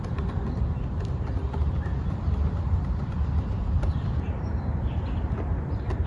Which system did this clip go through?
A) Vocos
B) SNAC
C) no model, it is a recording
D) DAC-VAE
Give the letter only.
C